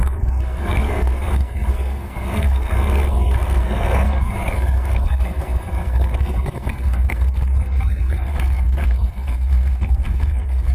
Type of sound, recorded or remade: remade